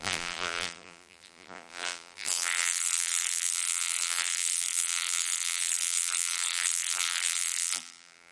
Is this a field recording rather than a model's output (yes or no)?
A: no